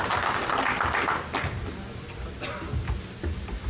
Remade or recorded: recorded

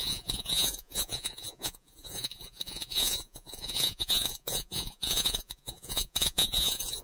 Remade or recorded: remade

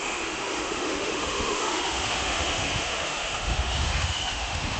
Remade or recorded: remade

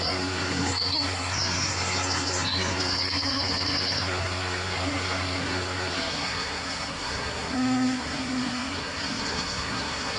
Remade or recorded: remade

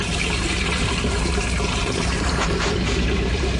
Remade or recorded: remade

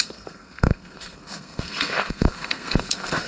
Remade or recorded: remade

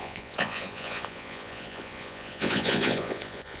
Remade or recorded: remade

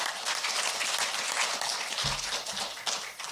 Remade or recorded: remade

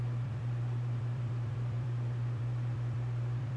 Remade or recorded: remade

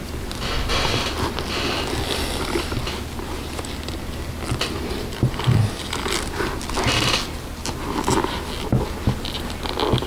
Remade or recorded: recorded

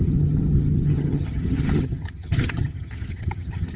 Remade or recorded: remade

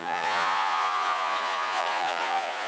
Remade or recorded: remade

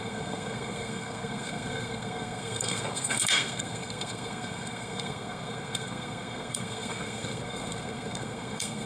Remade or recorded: remade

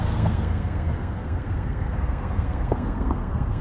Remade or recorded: remade